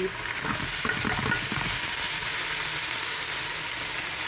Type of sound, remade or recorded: recorded